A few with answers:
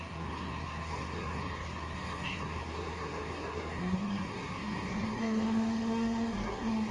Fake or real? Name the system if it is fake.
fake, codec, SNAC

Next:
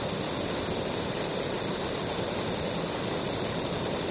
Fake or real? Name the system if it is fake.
real